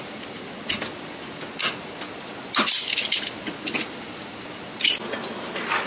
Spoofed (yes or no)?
no